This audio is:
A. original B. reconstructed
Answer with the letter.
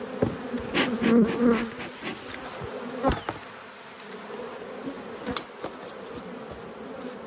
A